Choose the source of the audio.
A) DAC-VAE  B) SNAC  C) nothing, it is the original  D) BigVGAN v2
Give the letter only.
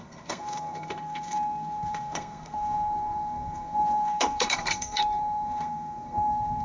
B